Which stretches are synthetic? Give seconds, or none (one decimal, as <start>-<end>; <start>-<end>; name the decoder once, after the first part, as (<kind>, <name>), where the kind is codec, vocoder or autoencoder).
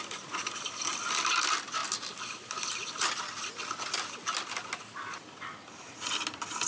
none